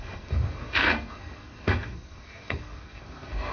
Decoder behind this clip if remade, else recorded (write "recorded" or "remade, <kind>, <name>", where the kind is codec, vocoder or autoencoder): remade, codec, SNAC